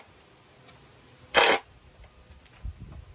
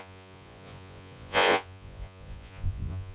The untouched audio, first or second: first